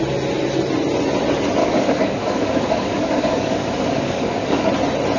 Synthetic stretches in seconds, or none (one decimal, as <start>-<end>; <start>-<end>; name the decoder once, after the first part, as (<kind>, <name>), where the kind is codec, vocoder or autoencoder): 1.6-4.7 (codec, DAC)

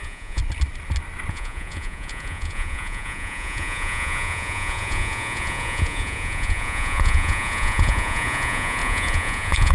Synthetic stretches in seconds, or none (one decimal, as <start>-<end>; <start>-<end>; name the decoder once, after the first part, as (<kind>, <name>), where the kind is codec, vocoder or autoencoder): 0.0-0.4 (vocoder, Vocos); 1.3-9.7

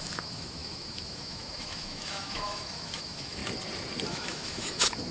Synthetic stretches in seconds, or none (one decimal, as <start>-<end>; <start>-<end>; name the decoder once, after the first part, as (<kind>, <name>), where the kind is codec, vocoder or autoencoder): 0.0-3.4 (autoencoder, DAC-VAE); 4.1-5.1

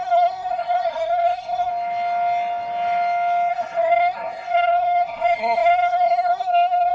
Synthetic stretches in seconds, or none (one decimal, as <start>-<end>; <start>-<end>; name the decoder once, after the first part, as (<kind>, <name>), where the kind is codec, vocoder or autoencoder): 0.0-1.7 (codec, SNAC); 3.5-6.9

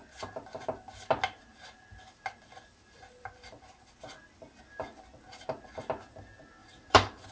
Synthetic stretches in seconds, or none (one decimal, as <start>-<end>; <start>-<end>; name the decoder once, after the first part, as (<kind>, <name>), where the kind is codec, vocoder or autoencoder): 6.6-7.3 (vocoder, BigVGAN v2)

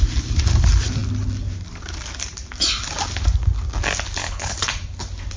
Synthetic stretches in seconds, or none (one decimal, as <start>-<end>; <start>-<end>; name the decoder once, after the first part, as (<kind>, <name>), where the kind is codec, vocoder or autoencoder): 4.2-4.7 (codec, HILCodec)

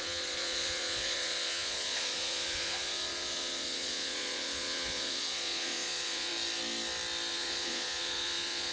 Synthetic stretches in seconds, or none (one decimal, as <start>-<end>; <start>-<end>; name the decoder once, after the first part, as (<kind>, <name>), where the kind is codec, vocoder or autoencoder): 0.0-6.3 (vocoder, Vocos); 7.3-8.7

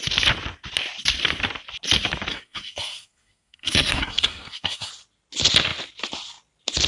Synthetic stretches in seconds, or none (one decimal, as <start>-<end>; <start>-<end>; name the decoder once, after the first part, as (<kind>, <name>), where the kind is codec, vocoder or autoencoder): 2.3-4.9 (codec, SNAC)